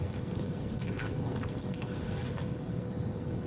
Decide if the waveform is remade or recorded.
remade